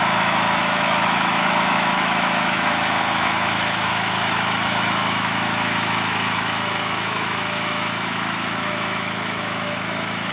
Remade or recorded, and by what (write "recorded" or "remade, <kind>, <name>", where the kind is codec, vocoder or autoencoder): remade, autoencoder, DAC-VAE